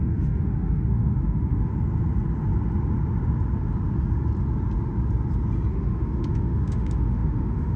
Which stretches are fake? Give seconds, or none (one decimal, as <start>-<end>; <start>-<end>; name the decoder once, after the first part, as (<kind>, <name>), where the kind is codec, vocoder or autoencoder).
0.0-1.7 (autoencoder, DAC-VAE); 5.7-7.8